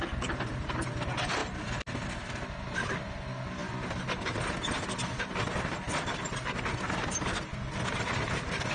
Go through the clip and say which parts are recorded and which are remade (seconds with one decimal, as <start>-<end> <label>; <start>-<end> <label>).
0.0-8.7 recorded